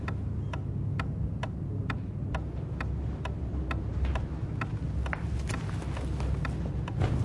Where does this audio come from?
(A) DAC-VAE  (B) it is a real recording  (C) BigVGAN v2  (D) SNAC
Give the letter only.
B